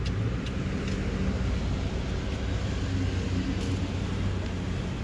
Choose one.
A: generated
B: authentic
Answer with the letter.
B